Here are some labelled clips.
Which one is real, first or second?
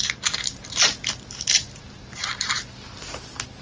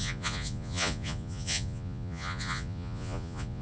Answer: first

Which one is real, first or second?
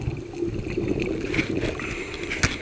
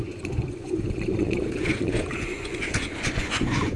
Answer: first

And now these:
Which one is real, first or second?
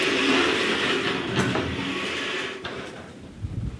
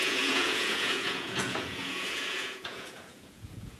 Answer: first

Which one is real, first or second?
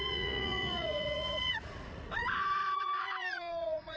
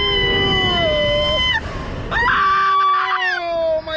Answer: second